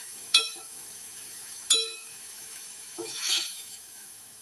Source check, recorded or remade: remade